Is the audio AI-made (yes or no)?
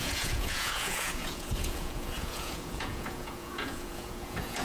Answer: yes